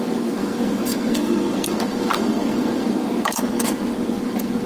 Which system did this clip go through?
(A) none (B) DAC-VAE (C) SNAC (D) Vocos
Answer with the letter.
C